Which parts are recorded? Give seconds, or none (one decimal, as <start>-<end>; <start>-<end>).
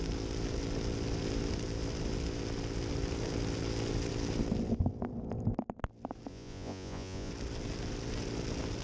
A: 0.0-6.3; 7.3-8.8